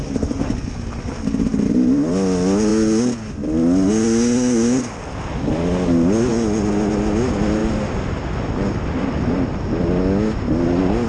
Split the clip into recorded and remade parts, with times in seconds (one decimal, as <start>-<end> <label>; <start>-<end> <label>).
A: 0.0-11.1 recorded